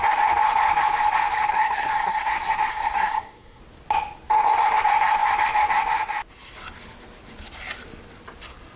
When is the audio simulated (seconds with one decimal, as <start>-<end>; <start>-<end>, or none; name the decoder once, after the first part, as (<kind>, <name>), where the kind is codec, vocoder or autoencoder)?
1.5-2.3 (codec, SNAC); 2.7-3.6